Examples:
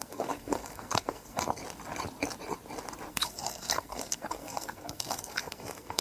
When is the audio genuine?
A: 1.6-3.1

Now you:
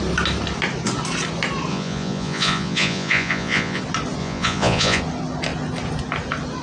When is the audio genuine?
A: 0.0-1.7; 3.8-4.2; 5.0-6.6

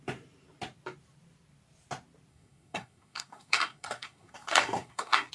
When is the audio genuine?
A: 0.0-2.3